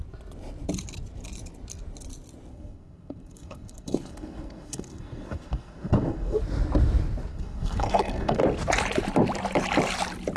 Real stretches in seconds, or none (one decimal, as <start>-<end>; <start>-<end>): 0.0-2.5; 6.4-7.3; 8.4-10.4